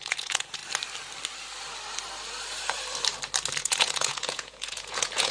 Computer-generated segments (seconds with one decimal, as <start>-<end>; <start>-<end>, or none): 0.0-0.6; 3.6-5.3